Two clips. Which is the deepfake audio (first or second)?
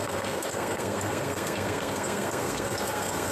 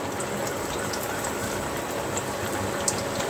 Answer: first